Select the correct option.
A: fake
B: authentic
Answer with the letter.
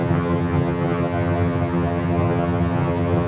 A